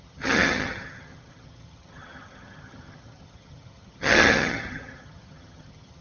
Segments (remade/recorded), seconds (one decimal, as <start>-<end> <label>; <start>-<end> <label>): 0.0-6.0 remade